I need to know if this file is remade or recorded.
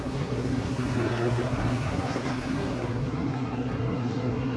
remade